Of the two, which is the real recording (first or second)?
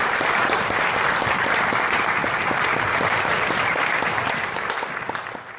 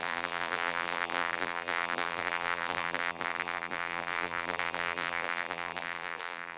first